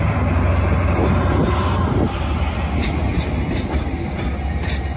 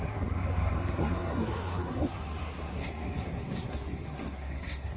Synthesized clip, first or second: second